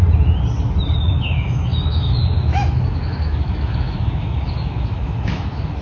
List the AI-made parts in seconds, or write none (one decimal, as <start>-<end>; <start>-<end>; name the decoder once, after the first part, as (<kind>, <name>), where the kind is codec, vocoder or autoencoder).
1.0-5.8 (autoencoder, DAC-VAE)